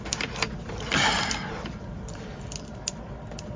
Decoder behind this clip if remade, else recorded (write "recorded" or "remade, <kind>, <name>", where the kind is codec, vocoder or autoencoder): recorded